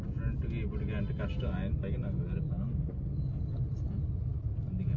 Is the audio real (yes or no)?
yes